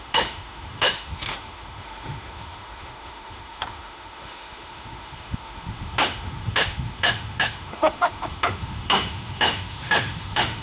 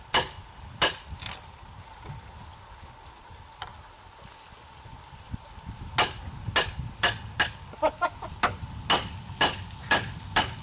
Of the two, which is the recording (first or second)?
second